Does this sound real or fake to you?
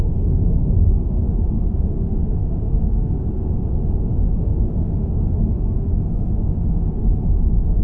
fake